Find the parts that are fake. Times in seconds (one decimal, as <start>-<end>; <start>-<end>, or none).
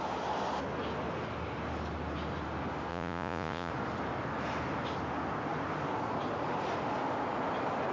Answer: 2.9-3.7